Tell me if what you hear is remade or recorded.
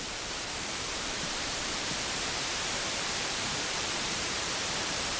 remade